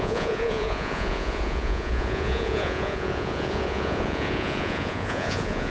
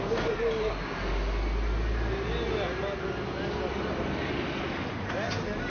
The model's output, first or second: first